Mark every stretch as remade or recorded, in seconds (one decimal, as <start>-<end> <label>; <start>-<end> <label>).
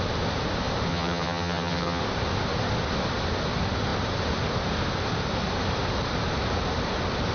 0.0-0.9 recorded; 0.9-2.0 remade; 2.0-7.3 recorded